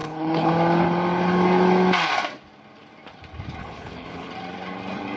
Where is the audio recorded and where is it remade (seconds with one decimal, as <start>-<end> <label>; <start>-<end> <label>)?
0.0-0.5 remade; 0.5-3.6 recorded; 3.6-4.3 remade; 4.3-5.2 recorded